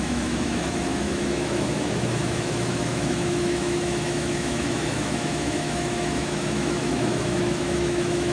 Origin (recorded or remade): remade